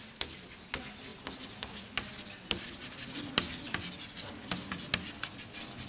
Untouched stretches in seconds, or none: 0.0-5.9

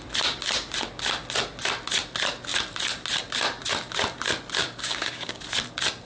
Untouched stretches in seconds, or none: 0.0-4.6; 5.4-6.0

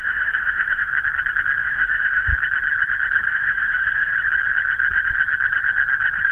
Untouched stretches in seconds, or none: 0.9-1.6; 2.3-3.3; 4.1-6.3

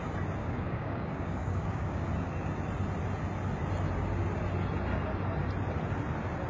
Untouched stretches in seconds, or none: 0.0-0.4; 2.0-6.5

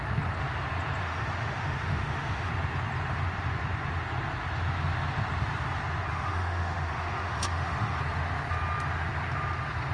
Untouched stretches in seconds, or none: 0.0-1.0; 2.5-6.1; 8.0-9.9